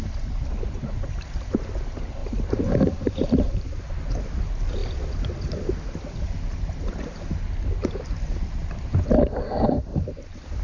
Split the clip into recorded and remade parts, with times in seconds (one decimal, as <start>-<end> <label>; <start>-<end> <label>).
0.0-2.2 recorded; 2.2-3.8 remade; 3.8-9.9 recorded; 9.9-10.6 remade